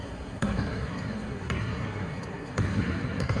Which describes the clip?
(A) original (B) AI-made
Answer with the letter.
B